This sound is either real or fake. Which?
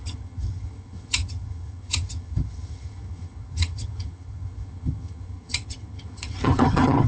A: fake